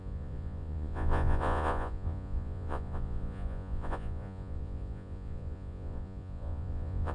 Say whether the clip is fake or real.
fake